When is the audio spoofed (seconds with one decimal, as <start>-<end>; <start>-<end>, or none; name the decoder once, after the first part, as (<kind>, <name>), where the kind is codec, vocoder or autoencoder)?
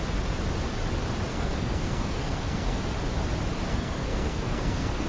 1.3-2.8 (codec, SNAC); 3.7-5.1